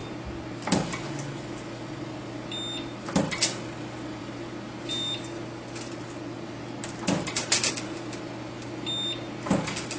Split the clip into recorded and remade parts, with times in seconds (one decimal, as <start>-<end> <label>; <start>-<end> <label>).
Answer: 0.0-10.0 recorded